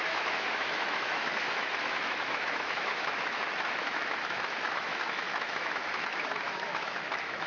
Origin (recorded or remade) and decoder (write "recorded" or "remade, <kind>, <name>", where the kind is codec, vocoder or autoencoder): remade, autoencoder, DAC-VAE